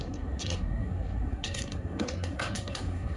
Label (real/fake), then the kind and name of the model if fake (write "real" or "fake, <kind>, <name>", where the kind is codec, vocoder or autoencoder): fake, codec, SNAC